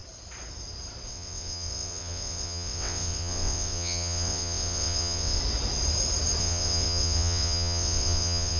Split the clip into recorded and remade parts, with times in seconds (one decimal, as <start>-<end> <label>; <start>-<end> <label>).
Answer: 0.0-1.1 recorded; 1.1-5.4 remade; 5.4-6.4 recorded; 6.4-8.6 remade